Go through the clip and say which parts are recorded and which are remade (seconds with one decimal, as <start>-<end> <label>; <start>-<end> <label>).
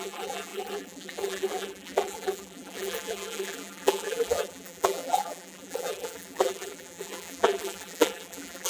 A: 0.0-8.7 remade